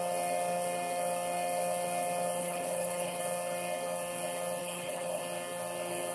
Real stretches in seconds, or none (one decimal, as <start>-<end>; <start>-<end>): 0.0-2.4; 3.2-4.6; 5.2-6.1